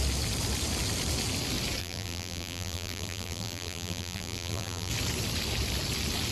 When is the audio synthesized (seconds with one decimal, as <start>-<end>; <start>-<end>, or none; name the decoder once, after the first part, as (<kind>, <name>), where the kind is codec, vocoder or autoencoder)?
1.8-4.9 (vocoder, BigVGAN v2)